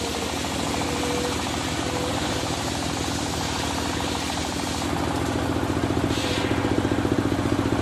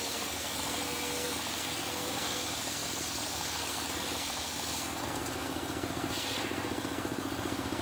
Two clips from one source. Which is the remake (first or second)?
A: second